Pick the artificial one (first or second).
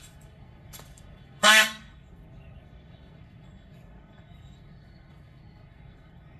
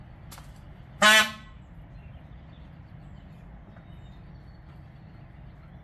first